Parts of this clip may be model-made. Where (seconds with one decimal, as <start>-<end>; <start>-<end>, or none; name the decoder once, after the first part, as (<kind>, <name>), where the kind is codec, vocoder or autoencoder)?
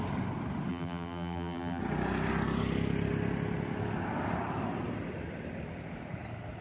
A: 0.7-1.8 (vocoder, BigVGAN v2)